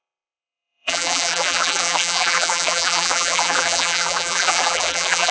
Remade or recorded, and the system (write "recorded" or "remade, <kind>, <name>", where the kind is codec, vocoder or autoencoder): remade, vocoder, BigVGAN v2